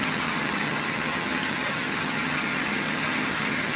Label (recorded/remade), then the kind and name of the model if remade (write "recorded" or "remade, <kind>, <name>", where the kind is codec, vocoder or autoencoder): remade, vocoder, HiFi-GAN